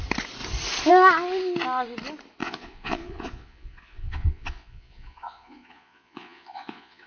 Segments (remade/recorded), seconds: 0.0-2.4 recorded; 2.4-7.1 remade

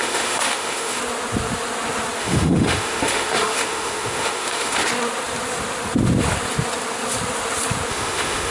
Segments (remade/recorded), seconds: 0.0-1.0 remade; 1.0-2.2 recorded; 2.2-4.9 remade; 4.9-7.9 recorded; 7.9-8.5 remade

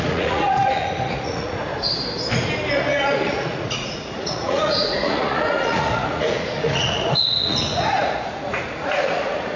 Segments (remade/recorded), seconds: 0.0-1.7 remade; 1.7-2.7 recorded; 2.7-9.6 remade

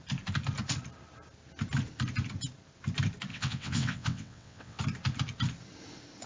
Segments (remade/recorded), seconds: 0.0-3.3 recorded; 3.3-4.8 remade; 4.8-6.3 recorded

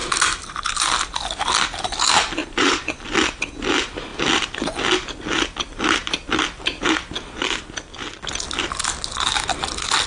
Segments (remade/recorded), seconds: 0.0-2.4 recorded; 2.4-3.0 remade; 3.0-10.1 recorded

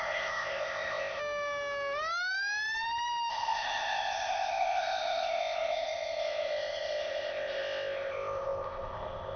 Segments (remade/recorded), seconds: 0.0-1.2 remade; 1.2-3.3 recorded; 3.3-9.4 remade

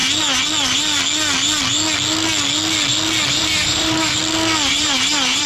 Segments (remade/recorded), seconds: 0.0-3.3 recorded; 3.3-4.2 remade; 4.2-4.7 recorded; 4.7-5.5 remade

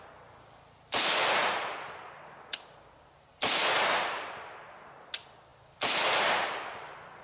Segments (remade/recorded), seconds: 0.0-7.2 recorded